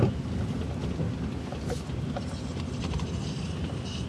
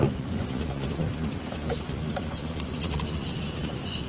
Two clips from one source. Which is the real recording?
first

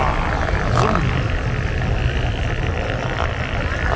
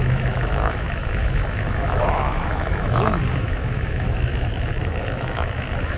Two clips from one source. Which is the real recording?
first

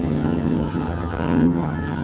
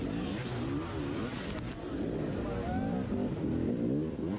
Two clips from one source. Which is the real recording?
second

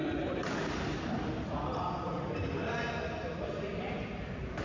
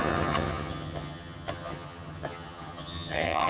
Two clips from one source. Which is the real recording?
first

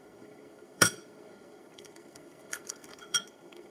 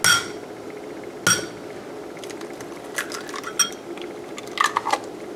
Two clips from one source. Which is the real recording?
second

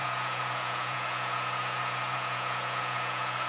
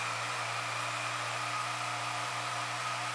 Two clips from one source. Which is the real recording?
second